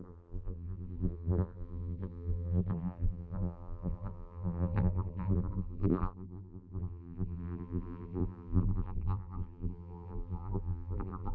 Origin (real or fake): fake